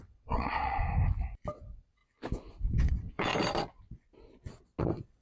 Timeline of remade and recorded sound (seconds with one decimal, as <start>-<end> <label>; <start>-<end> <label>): 0.0-0.8 remade; 0.8-1.5 recorded; 1.5-2.0 remade; 2.0-2.7 recorded; 2.7-3.3 remade; 3.3-4.8 recorded; 4.8-5.2 remade